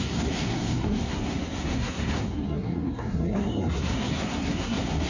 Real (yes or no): no